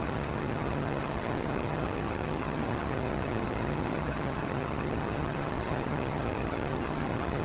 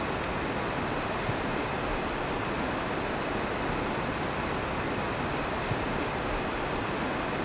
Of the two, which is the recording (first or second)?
second